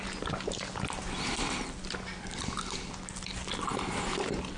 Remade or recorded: recorded